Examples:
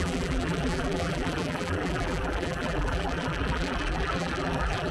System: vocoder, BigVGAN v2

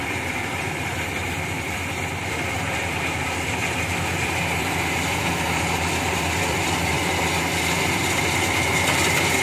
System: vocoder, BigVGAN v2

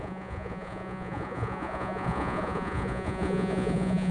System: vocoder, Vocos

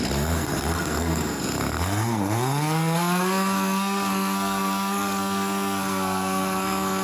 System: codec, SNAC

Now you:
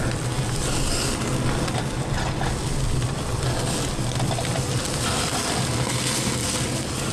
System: none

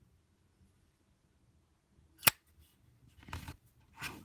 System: none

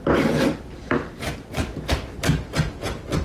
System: vocoder, BigVGAN v2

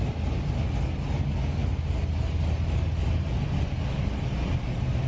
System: none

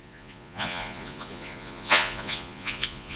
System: vocoder, Vocos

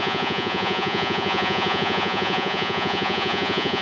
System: vocoder, Vocos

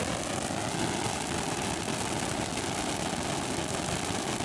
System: none